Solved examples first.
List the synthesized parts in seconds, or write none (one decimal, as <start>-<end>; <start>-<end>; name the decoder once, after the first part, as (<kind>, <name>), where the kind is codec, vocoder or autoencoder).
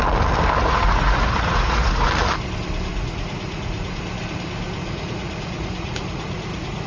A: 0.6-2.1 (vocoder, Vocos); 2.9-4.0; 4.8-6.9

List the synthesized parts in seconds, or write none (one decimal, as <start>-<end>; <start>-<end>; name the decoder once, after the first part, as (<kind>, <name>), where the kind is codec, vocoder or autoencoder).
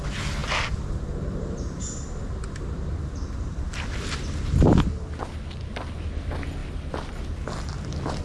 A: none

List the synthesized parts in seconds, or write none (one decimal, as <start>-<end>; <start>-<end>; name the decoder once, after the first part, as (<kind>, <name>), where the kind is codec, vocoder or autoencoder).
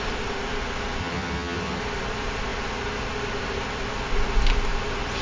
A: 1.0-1.8 (vocoder, HiFi-GAN)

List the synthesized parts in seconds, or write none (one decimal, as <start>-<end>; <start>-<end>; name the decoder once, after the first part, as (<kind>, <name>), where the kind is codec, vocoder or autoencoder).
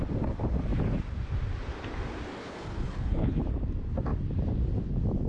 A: 2.4-3.4 (codec, HILCodec)